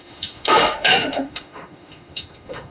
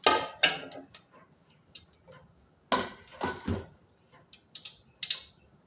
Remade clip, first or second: first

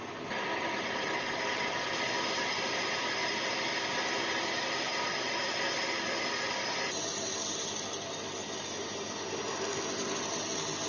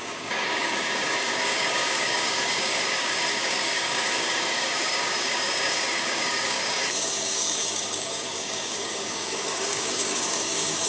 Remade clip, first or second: second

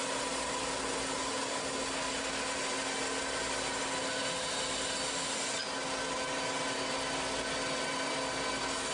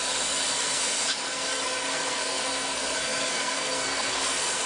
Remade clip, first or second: second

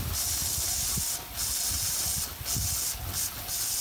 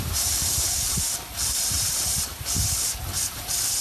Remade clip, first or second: second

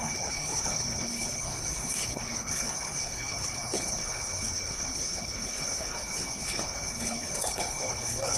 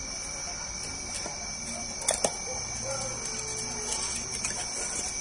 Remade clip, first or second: first